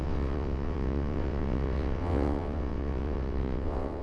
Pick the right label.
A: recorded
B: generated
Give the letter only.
B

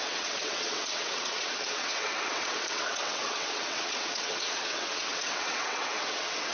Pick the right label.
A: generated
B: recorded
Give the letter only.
A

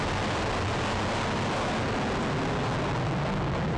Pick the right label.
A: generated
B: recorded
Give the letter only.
B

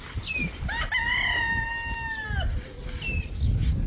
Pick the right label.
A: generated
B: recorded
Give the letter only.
B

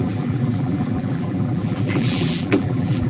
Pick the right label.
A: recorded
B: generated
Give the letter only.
B